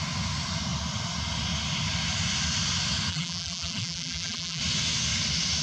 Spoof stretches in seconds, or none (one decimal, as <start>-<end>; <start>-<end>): 3.1-4.6